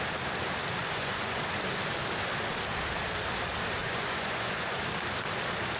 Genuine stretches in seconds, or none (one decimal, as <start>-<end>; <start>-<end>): 0.0-0.8; 1.4-3.8; 4.8-5.8